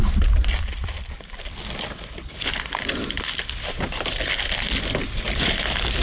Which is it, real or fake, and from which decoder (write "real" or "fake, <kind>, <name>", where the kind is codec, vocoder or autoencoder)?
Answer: real